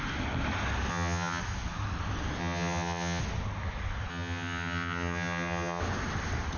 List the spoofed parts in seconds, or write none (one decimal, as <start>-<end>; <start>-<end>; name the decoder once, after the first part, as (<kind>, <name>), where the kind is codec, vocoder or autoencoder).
0.9-1.4 (vocoder, HiFi-GAN); 2.4-3.2; 4.1-5.8

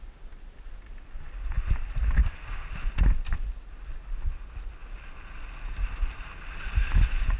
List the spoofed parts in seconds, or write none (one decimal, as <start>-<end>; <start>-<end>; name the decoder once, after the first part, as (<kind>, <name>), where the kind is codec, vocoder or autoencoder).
2.2-2.7 (codec, DAC)

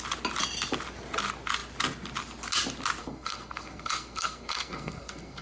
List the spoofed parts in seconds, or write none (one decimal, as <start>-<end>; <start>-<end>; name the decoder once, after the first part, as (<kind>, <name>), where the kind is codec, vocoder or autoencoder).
3.0-5.4 (codec, SNAC)